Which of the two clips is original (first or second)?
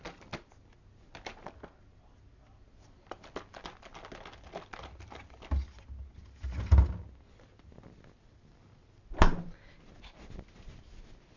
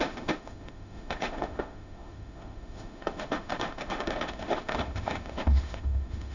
first